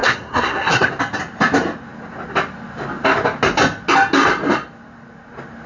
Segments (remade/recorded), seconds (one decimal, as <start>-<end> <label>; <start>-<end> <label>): 0.0-0.9 remade; 0.9-5.7 recorded